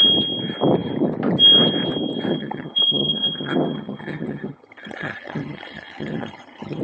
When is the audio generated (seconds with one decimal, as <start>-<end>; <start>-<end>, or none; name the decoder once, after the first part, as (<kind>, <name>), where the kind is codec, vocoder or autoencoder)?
2.3-6.8 (vocoder, HiFi-GAN)